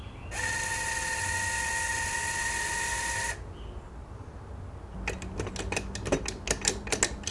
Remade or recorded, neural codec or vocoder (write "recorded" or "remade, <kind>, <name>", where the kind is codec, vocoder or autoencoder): recorded